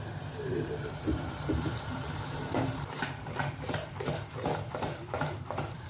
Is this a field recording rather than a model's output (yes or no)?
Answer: no